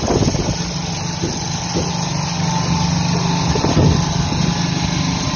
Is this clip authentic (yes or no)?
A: yes